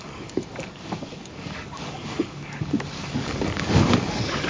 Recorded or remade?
remade